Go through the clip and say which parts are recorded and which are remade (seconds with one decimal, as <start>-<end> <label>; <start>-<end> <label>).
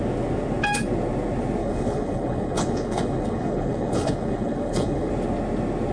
0.0-1.6 recorded; 1.6-5.1 remade; 5.1-5.9 recorded